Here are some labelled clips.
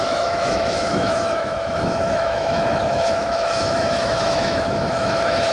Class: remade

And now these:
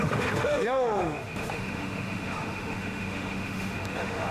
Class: remade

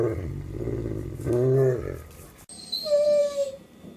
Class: recorded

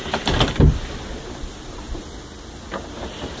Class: recorded